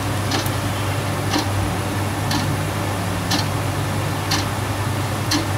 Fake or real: real